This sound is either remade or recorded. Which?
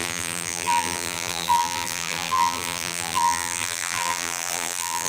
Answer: remade